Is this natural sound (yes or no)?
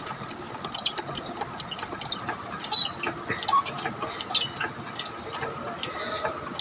yes